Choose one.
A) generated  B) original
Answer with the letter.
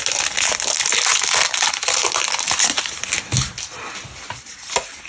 B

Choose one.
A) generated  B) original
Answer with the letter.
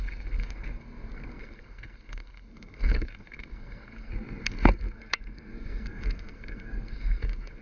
A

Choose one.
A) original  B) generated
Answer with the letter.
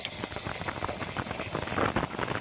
A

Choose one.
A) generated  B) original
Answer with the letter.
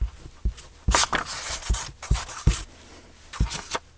B